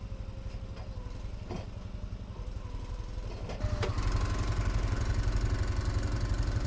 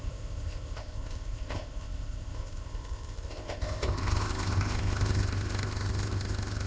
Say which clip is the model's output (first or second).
second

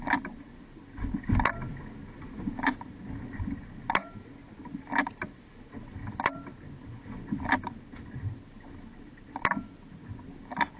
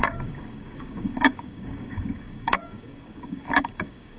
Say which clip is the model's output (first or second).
second